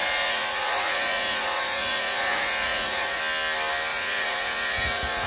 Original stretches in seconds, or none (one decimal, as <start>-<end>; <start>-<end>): 3.2-3.9